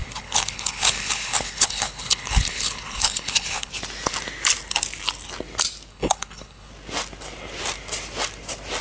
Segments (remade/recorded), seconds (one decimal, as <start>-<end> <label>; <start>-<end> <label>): 0.0-3.7 remade; 3.7-5.9 recorded; 5.9-6.7 remade; 6.7-8.8 recorded